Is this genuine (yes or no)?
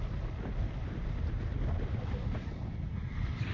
yes